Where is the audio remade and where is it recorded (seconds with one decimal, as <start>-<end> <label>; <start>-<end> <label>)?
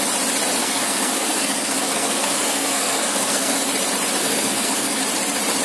0.0-0.6 recorded; 0.6-3.6 remade; 3.6-4.2 recorded; 4.2-5.0 remade; 5.0-5.6 recorded